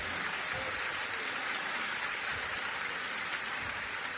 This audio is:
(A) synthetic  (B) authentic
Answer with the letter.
B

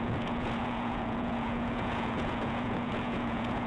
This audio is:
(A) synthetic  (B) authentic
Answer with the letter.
A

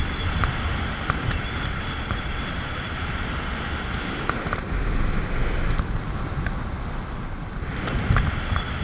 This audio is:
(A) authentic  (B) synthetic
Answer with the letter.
A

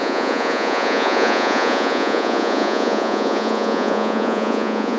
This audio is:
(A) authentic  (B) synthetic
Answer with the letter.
B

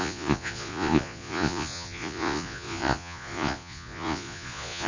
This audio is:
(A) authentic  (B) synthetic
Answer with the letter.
B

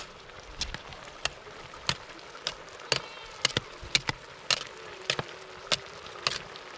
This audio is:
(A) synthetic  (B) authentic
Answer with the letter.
B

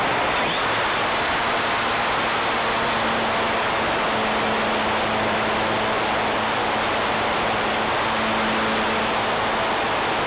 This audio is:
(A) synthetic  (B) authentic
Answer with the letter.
B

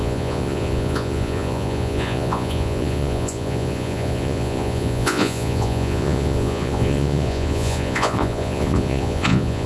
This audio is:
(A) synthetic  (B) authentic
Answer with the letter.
A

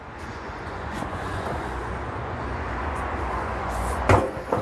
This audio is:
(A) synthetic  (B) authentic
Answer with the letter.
A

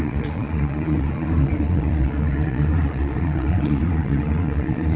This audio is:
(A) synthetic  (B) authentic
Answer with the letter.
A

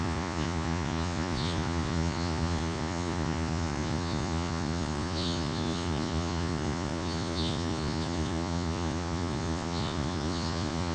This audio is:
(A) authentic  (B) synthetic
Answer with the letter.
B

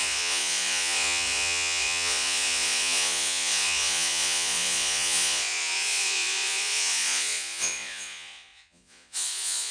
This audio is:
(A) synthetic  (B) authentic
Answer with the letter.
A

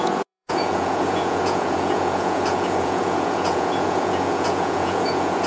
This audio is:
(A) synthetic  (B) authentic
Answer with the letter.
A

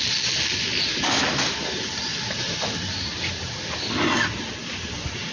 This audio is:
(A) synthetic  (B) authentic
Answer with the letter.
B